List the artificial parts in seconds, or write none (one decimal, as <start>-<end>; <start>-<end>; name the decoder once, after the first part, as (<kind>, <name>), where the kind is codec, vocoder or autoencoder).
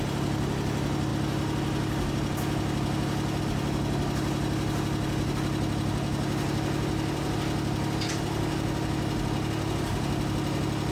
none